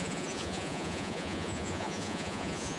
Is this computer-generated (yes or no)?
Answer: yes